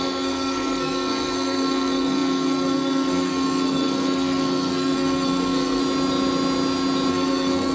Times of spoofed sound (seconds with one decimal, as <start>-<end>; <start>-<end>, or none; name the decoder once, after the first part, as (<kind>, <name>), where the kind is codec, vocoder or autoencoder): 0.0-5.8 (codec, SNAC); 7.1-7.7